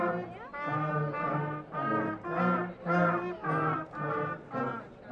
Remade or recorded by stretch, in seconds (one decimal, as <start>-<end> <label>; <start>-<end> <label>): 0.0-2.6 recorded; 2.6-4.6 remade; 4.6-5.1 recorded